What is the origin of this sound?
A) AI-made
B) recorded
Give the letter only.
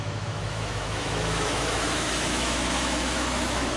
A